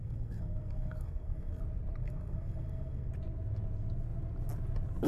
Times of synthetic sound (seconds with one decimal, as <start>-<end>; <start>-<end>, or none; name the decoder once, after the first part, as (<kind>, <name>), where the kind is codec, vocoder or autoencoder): 0.0-1.6 (codec, SNAC); 2.0-3.1